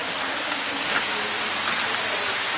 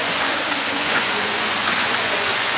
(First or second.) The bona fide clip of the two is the first